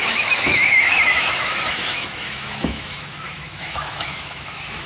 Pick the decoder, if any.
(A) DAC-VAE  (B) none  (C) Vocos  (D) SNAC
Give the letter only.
A